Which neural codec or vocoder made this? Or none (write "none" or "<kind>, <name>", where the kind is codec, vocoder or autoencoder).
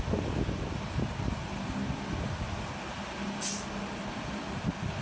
none